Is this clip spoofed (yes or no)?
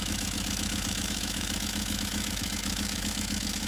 yes